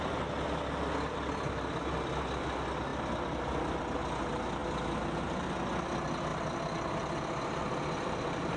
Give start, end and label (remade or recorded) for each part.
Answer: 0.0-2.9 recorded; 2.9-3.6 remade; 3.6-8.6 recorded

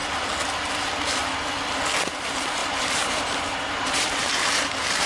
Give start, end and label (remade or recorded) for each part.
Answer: 0.0-2.1 recorded; 2.1-5.1 remade

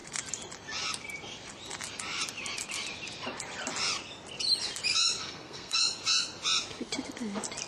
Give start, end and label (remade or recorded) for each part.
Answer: 0.0-5.2 recorded; 5.2-5.8 remade; 5.8-7.7 recorded

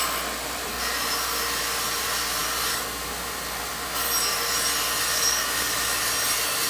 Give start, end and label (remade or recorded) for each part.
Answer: 0.0-5.1 recorded; 5.1-6.0 remade; 6.0-6.7 recorded

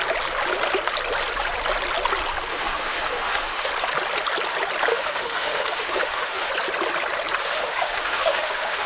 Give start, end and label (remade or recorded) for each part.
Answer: 0.0-2.5 recorded; 2.5-3.7 remade; 3.7-4.9 recorded; 4.9-6.5 remade; 6.5-7.4 recorded; 7.4-8.9 remade

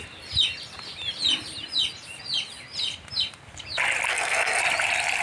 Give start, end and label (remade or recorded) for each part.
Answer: 0.0-4.1 recorded; 4.1-4.6 remade; 4.6-5.2 recorded

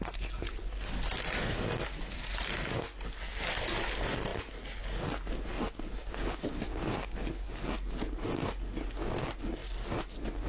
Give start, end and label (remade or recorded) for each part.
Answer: 0.0-10.5 recorded

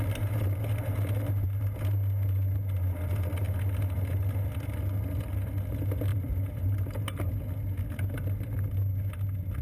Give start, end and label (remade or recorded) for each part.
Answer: 0.0-6.1 recorded; 6.1-7.3 remade; 7.3-9.6 recorded